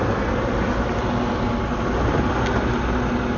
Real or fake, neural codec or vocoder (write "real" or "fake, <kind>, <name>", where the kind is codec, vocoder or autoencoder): real